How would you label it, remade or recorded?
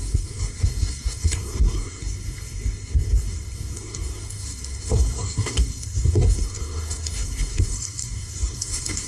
remade